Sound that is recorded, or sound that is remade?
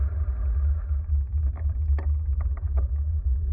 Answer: remade